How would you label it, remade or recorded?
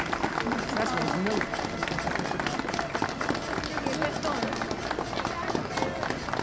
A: recorded